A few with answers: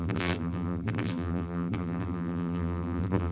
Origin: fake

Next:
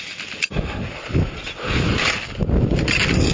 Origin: real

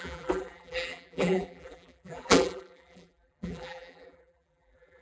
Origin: fake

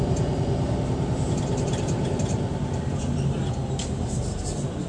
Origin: fake